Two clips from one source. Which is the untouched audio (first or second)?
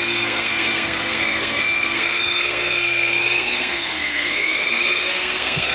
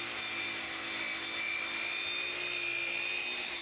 second